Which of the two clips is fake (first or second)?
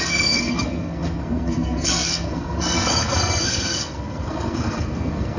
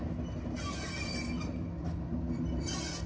first